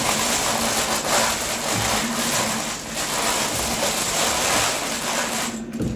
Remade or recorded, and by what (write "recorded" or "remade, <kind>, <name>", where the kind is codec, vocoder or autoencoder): recorded